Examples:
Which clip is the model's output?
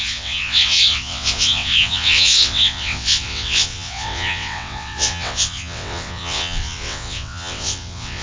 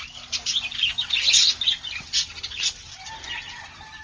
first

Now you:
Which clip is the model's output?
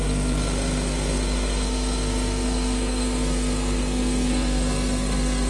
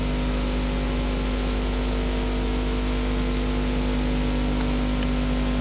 first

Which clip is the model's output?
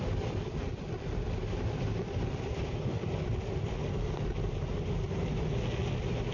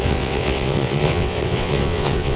second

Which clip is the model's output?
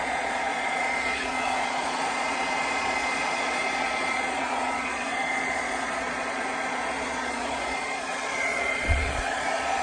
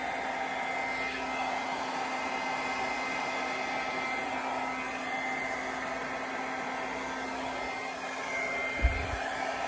first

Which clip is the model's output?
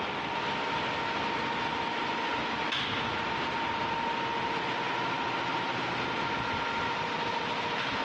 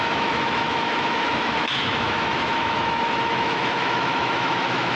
second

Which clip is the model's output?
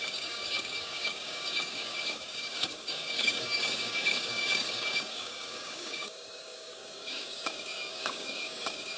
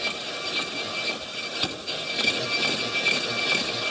first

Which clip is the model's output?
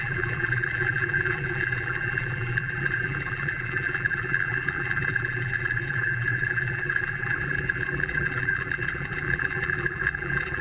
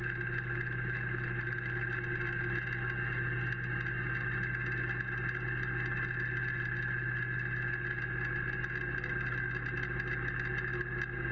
first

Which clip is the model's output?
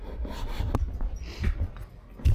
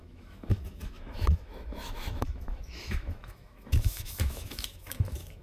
second